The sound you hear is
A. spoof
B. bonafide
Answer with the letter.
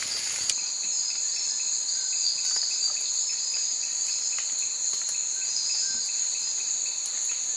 B